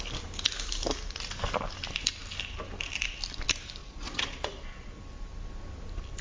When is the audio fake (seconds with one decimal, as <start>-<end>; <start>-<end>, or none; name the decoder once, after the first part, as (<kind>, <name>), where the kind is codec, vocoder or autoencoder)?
3.8-5.0 (vocoder, Vocos)